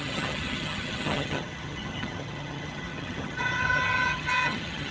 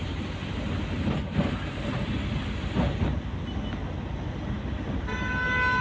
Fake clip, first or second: first